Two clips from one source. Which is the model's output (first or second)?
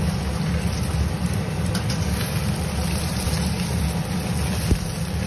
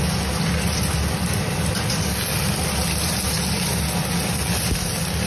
first